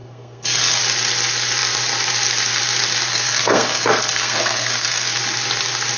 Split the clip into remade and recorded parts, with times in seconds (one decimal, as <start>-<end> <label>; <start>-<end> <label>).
0.0-0.8 remade; 0.8-3.1 recorded; 3.1-5.2 remade; 5.2-6.0 recorded